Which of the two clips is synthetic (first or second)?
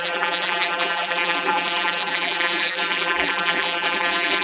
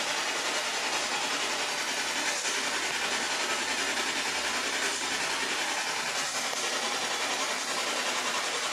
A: first